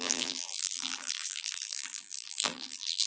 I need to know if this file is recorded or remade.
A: remade